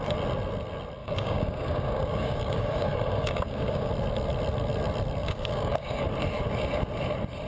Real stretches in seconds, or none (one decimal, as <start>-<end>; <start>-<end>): 0.0-1.0; 3.9-5.2; 6.0-7.5